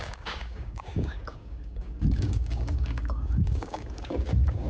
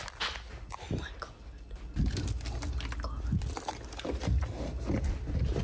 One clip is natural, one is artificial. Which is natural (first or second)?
second